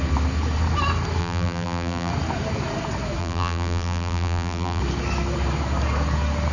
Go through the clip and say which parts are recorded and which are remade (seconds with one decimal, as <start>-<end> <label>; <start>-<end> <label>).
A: 0.0-1.2 recorded; 1.2-2.1 remade; 2.1-3.2 recorded; 3.2-4.8 remade; 4.8-6.5 recorded